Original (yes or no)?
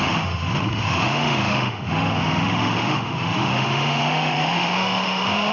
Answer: no